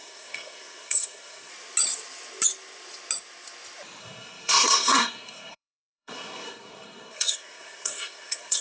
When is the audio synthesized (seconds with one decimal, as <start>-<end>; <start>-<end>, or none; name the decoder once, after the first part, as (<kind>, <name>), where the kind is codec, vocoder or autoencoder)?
0.0-1.5 (codec, SNAC); 4.0-8.6